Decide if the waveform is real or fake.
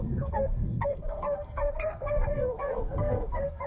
fake